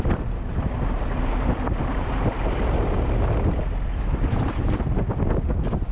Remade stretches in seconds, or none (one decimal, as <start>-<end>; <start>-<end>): 0.5-2.5